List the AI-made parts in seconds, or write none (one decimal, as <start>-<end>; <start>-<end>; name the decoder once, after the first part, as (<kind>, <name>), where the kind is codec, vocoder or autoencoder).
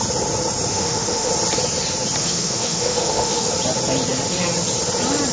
0.7-1.3 (autoencoder, DAC-VAE); 2.2-3.5